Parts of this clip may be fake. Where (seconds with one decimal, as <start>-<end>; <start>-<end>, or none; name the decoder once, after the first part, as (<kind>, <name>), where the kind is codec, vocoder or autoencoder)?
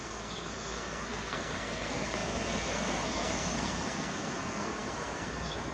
0.0-5.7 (codec, SNAC)